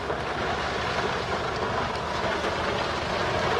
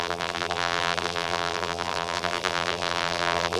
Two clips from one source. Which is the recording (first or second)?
first